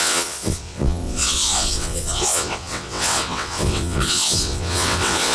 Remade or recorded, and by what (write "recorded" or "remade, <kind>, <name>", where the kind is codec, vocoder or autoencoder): remade, vocoder, WaveNeXt